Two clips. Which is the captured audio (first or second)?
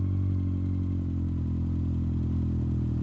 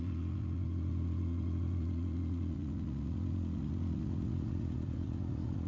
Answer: first